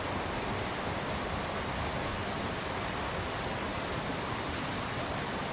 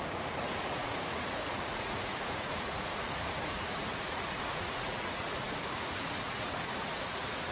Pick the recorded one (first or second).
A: first